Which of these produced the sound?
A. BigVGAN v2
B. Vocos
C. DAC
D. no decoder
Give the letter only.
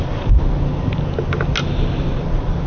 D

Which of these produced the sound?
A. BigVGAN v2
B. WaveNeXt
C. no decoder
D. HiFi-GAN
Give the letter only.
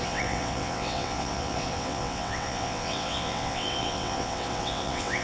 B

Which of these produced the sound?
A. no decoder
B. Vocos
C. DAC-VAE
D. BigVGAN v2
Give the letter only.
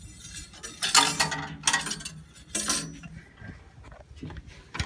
A